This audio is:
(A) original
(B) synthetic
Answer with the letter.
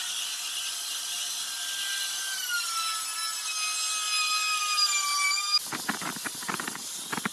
A